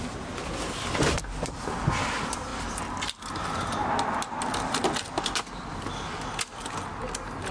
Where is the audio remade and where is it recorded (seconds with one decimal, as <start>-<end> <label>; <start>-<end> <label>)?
0.0-7.5 recorded